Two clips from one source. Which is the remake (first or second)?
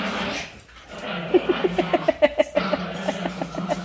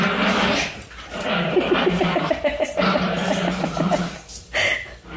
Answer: second